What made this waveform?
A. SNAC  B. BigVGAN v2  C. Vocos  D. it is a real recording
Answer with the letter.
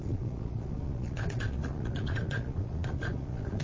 C